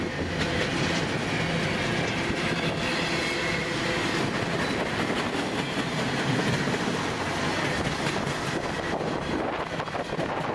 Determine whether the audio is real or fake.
real